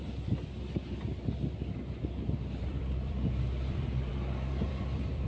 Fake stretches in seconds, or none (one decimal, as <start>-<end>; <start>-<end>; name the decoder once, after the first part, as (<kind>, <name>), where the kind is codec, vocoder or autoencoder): 0.0-0.8 (vocoder, BigVGAN v2); 2.0-4.1; 4.7-5.3